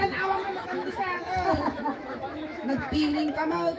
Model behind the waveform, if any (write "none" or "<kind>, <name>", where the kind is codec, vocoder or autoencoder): autoencoder, DAC-VAE